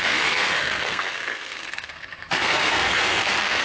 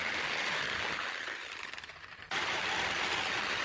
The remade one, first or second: first